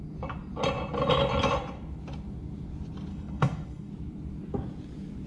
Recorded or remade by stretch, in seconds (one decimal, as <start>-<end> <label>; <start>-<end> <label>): 0.0-3.1 recorded; 3.1-3.9 remade; 3.9-5.3 recorded